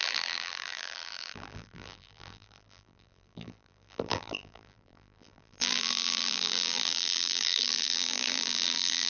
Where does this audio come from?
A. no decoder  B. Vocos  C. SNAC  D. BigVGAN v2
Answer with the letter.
D